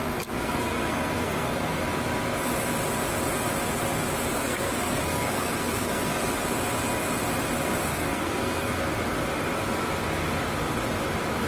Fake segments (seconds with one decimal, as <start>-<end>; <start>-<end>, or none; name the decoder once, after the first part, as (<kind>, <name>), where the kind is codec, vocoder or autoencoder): 0.0-1.8 (codec, SNAC); 4.3-6.2; 7.9-8.8